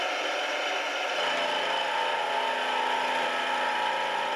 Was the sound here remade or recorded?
recorded